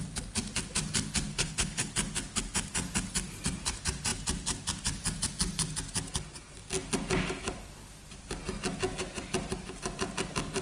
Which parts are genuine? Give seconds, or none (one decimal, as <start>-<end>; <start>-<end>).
0.0-1.3; 1.9-10.6